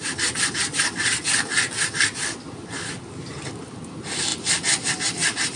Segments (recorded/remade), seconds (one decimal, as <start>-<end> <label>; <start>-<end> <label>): 0.0-5.6 recorded